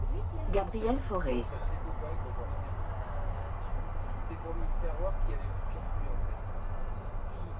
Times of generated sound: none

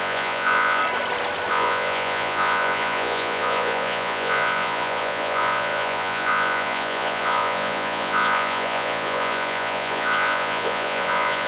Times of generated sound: 0.0-0.8 (vocoder, Vocos); 1.5-11.5

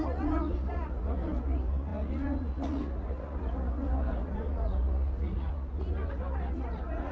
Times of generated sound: 0.0-7.1 (vocoder, Vocos)

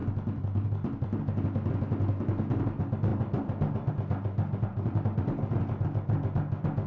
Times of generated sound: 0.0-1.2 (vocoder, BigVGAN v2); 3.1-3.9